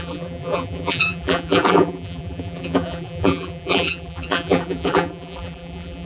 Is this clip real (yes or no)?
no